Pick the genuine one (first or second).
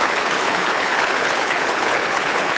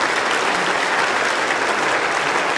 second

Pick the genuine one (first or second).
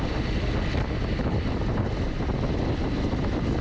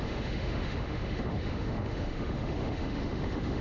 first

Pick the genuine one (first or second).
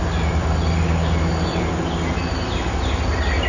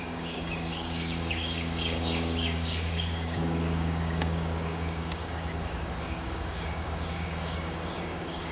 first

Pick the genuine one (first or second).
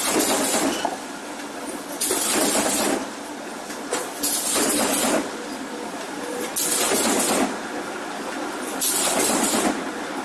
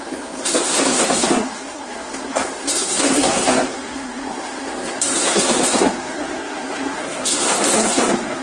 first